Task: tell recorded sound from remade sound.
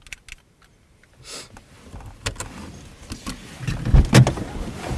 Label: recorded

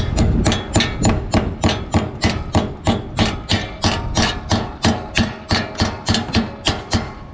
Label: recorded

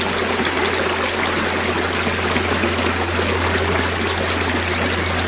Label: recorded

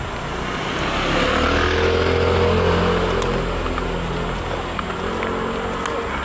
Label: recorded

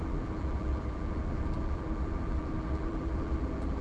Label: remade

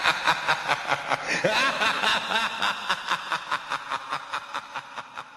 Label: recorded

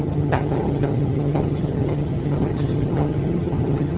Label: remade